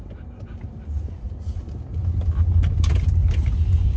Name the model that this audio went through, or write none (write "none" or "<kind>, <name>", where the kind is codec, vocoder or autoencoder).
none